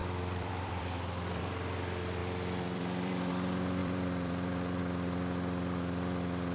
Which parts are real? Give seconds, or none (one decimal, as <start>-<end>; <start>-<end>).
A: 1.4-2.2; 3.3-3.8; 4.8-6.5